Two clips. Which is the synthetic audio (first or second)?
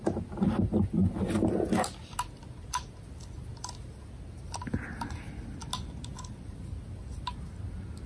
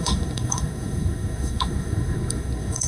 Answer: second